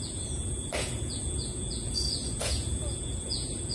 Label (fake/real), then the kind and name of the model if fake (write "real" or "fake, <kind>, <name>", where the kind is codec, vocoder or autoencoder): fake, vocoder, Vocos